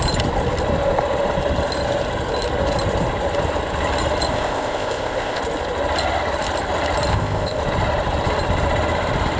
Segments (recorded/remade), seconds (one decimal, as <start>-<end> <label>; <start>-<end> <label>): 0.0-4.3 recorded; 4.3-5.4 remade; 5.4-7.1 recorded; 7.1-7.6 remade; 7.6-9.4 recorded